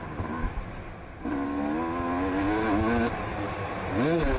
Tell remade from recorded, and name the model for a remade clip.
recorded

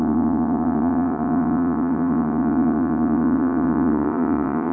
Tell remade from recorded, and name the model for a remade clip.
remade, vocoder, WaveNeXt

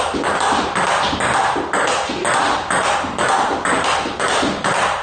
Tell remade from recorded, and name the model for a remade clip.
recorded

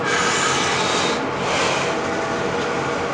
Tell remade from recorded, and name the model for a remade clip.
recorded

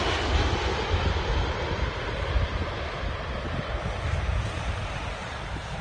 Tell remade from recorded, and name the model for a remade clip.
recorded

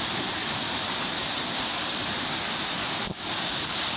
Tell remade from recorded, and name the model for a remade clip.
recorded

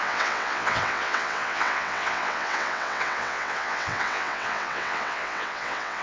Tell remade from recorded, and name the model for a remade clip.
remade, vocoder, WaveNeXt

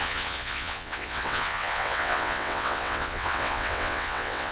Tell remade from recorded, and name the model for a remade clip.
remade, vocoder, WaveNeXt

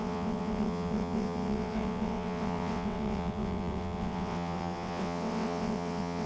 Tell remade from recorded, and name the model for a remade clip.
remade, vocoder, WaveNeXt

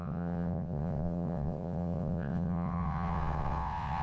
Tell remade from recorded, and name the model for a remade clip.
remade, vocoder, WaveNeXt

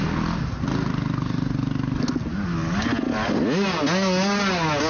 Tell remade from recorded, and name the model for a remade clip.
recorded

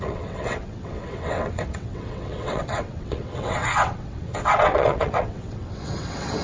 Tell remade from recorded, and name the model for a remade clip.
remade, vocoder, WaveNeXt